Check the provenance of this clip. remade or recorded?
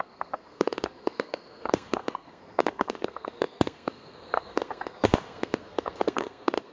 remade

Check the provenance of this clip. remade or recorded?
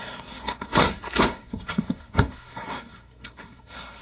remade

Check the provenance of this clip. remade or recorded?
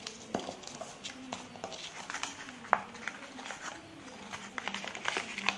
recorded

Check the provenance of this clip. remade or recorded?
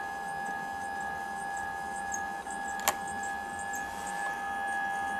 recorded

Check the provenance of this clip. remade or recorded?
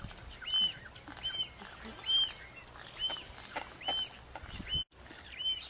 recorded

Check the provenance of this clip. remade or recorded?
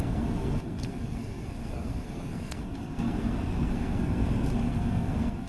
remade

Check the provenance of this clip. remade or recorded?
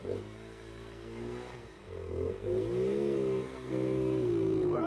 remade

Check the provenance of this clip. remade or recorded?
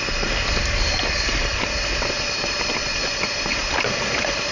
recorded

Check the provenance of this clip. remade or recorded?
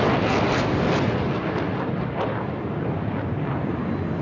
recorded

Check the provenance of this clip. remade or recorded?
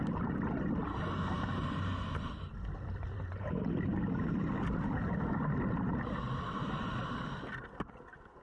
recorded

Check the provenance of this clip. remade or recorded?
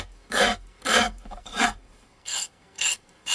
remade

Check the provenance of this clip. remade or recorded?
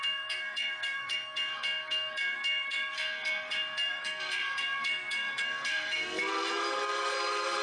remade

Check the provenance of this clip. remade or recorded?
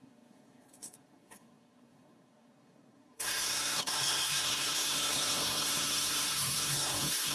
remade